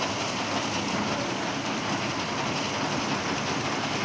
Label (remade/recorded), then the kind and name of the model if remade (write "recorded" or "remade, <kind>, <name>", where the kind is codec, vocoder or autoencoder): recorded